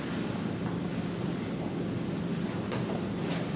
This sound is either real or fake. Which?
real